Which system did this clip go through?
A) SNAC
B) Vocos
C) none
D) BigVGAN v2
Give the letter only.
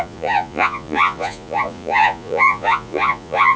B